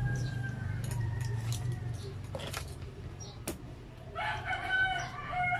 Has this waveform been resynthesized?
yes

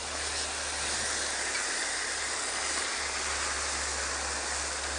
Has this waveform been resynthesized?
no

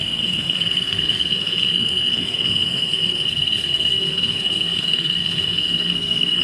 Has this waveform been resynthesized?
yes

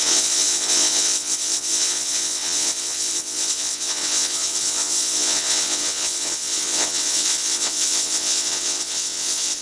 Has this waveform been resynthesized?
yes